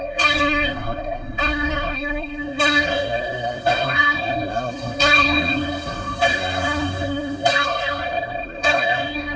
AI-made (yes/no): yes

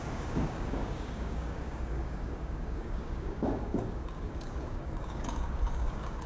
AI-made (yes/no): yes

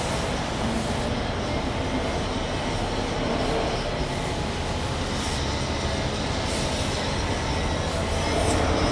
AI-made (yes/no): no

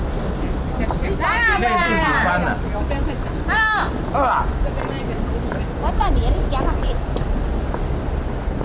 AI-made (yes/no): no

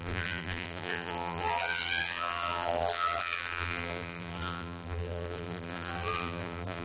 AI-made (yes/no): yes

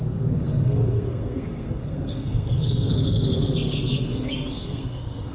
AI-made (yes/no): yes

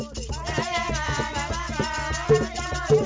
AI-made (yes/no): yes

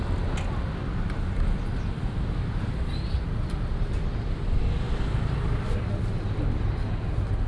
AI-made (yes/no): no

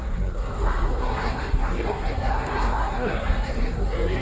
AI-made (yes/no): yes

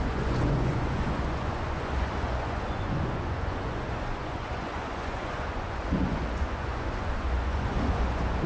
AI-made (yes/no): yes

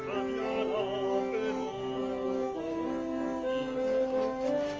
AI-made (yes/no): no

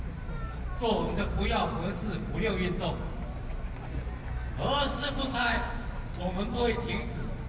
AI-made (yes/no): no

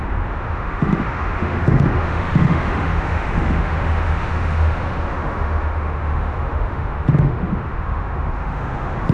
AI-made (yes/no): yes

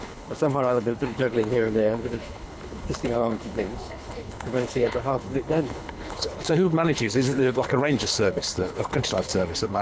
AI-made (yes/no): yes